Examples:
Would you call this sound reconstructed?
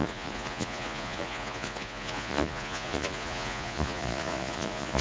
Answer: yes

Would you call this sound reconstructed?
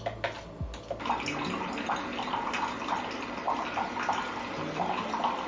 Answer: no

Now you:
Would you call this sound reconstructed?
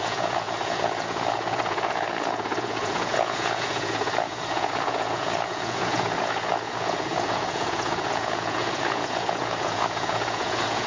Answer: yes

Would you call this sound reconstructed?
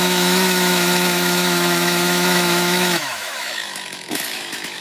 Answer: yes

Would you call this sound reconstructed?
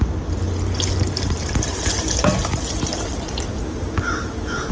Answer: no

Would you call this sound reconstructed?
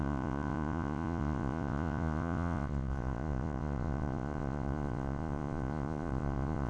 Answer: yes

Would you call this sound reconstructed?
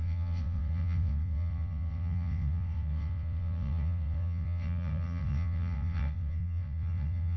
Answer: yes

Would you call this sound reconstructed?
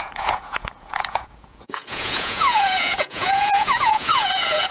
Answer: yes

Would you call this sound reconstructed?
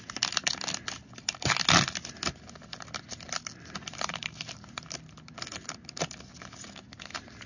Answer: no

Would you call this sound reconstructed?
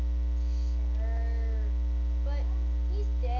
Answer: no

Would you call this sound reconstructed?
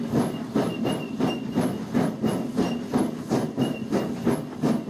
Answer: no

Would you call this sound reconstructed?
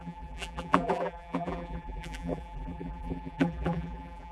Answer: yes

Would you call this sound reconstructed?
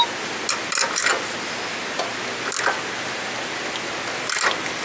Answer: no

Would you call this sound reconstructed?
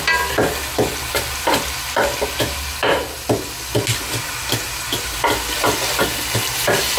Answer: no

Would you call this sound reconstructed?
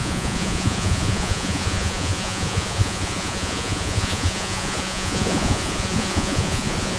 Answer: yes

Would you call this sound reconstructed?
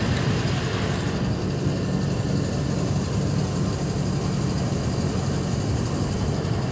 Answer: no